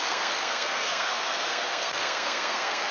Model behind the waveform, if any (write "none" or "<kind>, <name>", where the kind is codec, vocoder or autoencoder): codec, SNAC